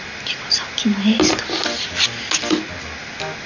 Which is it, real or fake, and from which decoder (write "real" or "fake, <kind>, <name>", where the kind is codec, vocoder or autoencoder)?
real